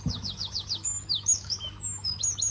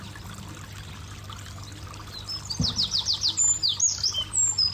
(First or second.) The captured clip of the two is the second